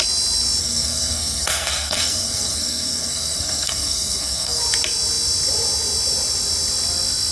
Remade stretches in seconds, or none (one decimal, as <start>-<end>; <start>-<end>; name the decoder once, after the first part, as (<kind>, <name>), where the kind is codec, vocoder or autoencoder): 0.6-4.6 (codec, SNAC)